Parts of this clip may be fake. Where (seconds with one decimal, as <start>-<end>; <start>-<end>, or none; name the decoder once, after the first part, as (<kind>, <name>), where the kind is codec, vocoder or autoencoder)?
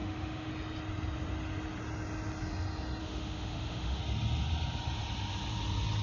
0.0-0.5 (autoencoder, DAC-VAE); 3.0-4.0